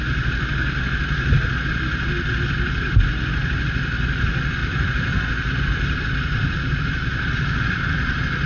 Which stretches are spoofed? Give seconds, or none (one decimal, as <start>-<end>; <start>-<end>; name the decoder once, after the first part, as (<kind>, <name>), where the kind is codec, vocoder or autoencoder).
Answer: 4.6-8.5 (vocoder, BigVGAN v2)